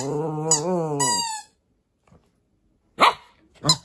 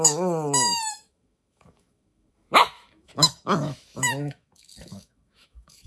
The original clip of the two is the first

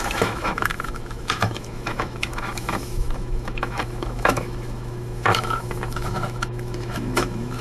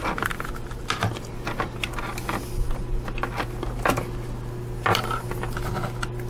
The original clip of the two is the second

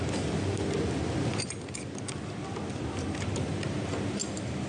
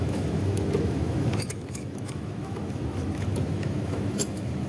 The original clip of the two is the first